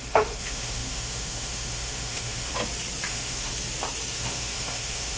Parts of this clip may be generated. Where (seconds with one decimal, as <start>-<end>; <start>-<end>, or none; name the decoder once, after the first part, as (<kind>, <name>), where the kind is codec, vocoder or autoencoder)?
0.0-2.5 (autoencoder, DAC-VAE); 3.1-3.5; 4.1-5.2